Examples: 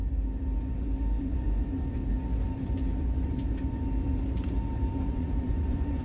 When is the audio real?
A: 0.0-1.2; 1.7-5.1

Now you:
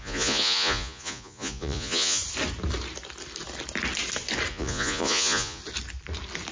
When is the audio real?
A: 2.2-4.5; 5.6-6.5

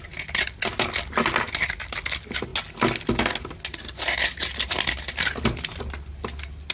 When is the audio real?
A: 0.0-6.7